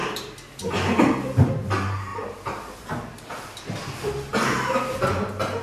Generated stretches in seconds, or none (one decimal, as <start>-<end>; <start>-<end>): 0.0-1.0; 2.1-3.3